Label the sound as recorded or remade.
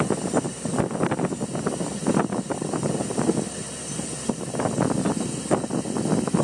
recorded